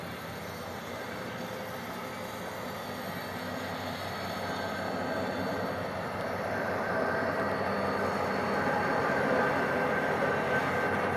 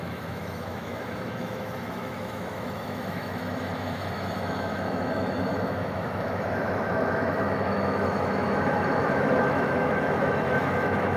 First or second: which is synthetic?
second